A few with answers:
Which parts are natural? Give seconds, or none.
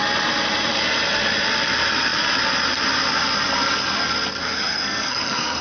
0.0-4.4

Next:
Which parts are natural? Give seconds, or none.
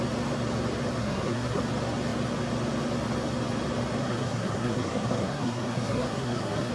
0.0-1.0; 1.6-4.0